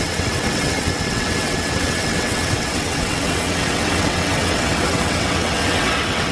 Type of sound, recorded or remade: remade